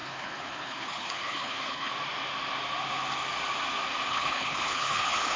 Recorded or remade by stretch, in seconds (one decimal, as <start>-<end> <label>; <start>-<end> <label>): 0.0-1.9 remade; 1.9-4.1 recorded; 4.1-5.4 remade